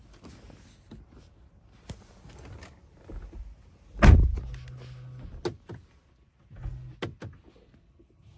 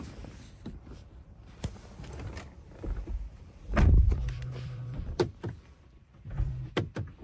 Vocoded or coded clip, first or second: second